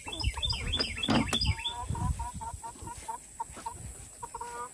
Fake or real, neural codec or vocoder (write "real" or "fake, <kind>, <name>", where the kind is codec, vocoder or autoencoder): real